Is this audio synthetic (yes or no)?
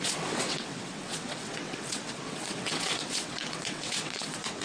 yes